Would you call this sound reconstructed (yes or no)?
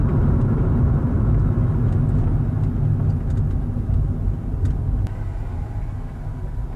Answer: no